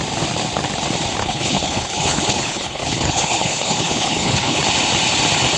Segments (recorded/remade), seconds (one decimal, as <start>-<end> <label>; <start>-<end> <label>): 0.0-1.2 recorded; 1.2-4.6 remade; 4.6-5.6 recorded